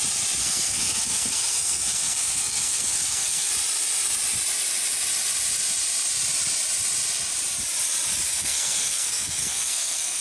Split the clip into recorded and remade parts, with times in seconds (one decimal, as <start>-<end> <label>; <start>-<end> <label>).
0.0-0.4 recorded; 0.4-3.5 remade; 3.5-8.3 recorded; 8.3-10.2 remade

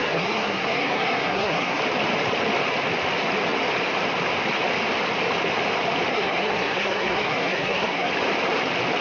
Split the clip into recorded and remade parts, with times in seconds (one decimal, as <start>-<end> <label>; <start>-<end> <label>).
0.0-1.8 remade; 1.8-6.1 recorded; 6.1-8.1 remade; 8.1-9.0 recorded

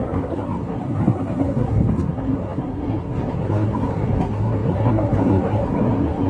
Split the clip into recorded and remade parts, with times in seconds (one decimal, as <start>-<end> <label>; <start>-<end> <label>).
0.0-6.3 remade

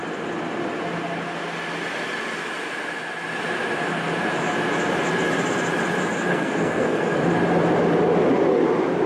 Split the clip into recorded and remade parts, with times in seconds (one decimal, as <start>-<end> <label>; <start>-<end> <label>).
0.0-6.3 recorded; 6.3-7.2 remade; 7.2-9.1 recorded